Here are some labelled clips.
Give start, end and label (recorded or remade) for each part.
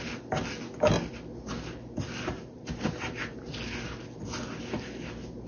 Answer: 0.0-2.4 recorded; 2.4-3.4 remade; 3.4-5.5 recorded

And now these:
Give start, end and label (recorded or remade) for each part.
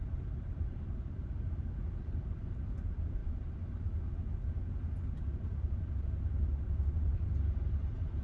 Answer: 0.0-3.2 remade; 3.2-6.6 recorded; 6.6-8.2 remade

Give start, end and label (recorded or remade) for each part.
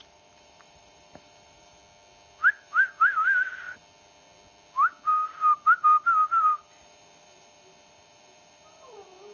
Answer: 0.0-1.8 remade; 1.8-2.6 recorded; 2.6-3.8 remade; 3.8-5.8 recorded; 5.8-9.3 remade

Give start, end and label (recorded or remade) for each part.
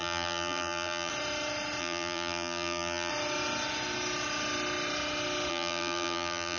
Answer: 0.0-1.1 remade; 1.1-1.8 recorded; 1.8-3.1 remade; 3.1-5.5 recorded; 5.5-6.6 remade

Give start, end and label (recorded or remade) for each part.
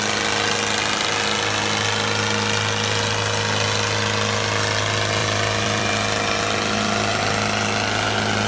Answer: 0.0-5.2 recorded; 5.2-5.9 remade; 5.9-8.5 recorded